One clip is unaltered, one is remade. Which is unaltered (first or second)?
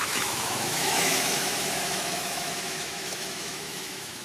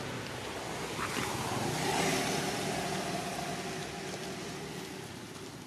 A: second